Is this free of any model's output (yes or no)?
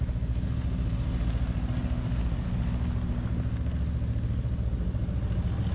yes